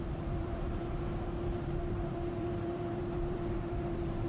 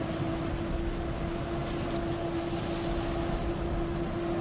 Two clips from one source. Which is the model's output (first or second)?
first